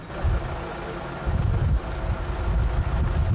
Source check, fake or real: real